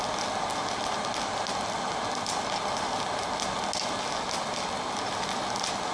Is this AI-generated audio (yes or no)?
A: no